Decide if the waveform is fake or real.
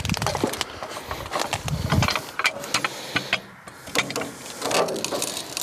real